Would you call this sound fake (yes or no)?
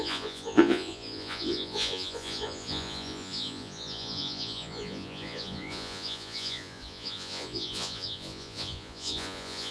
yes